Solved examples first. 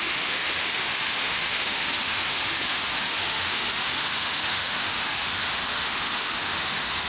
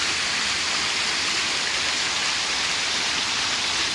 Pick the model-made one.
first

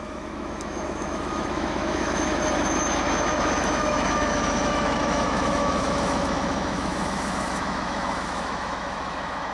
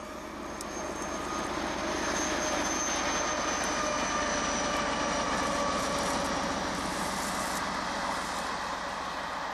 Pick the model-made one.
first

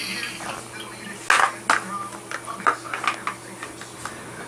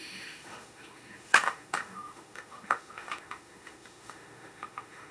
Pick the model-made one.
second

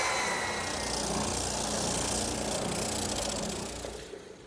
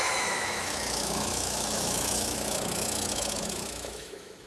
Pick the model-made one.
second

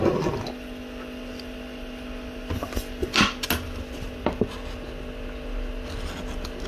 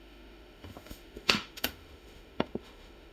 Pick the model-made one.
second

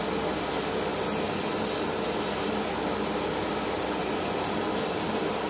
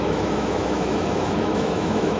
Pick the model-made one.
second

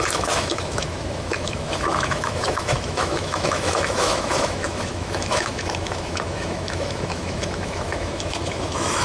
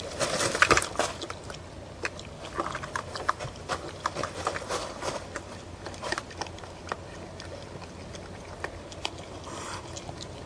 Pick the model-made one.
first